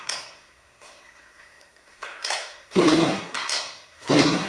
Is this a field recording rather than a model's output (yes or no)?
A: no